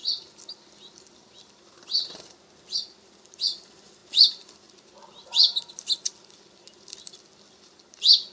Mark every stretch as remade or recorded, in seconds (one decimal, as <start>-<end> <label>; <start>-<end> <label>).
0.0-8.3 recorded